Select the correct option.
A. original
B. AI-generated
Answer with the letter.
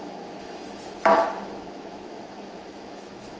B